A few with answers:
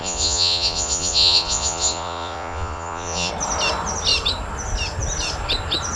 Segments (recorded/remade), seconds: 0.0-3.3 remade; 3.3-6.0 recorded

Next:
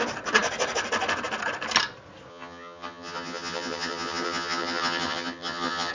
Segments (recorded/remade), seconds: 0.0-2.3 recorded; 2.3-5.9 remade

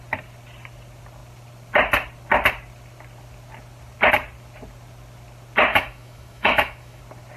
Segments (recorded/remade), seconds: 0.0-5.7 recorded; 5.7-7.0 remade; 7.0-7.4 recorded

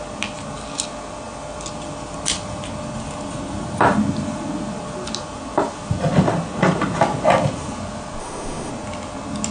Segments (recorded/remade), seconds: 0.0-8.2 recorded; 8.2-8.7 remade; 8.7-9.5 recorded